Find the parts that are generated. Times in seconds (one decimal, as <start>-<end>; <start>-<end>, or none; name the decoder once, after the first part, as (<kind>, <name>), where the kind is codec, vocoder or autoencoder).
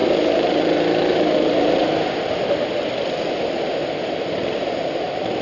0.0-1.8 (vocoder, BigVGAN v2); 5.0-5.4